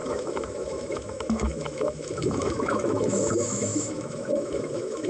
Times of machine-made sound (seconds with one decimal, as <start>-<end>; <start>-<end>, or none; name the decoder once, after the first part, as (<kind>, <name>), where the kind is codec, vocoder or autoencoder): 0.0-5.1 (autoencoder, DAC-VAE)